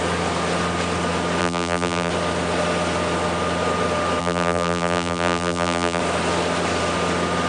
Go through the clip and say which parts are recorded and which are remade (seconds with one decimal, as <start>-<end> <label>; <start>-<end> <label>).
0.0-1.4 recorded; 1.4-2.1 remade; 2.1-4.2 recorded; 4.2-6.0 remade; 6.0-7.5 recorded